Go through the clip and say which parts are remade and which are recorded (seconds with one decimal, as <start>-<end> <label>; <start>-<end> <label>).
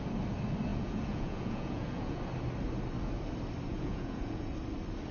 0.0-0.7 recorded; 0.7-2.2 remade; 2.2-3.7 recorded; 3.7-4.5 remade; 4.5-5.1 recorded